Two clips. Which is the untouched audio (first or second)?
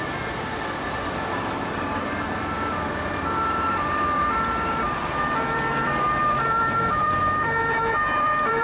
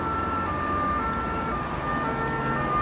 second